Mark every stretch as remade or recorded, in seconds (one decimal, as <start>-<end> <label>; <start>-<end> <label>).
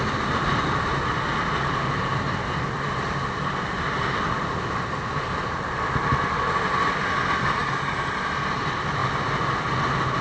0.0-10.2 recorded